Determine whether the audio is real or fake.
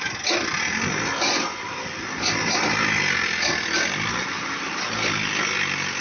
real